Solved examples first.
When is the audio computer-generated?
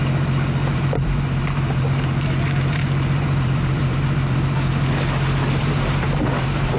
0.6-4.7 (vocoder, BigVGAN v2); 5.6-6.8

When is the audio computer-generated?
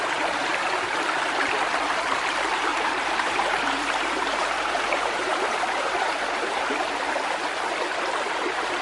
2.7-6.6 (vocoder, BigVGAN v2)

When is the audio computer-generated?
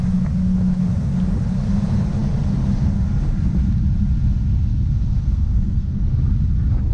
5.2-6.1 (codec, SNAC)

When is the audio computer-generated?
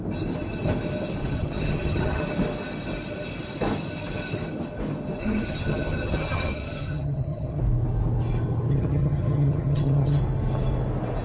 1.2-2.2 (vocoder, HiFi-GAN); 5.2-7.6; 8.7-10.2